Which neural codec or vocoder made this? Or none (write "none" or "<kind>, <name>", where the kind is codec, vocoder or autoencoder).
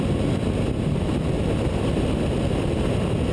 none